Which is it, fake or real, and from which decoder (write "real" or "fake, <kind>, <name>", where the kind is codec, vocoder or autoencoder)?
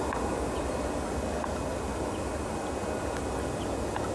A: real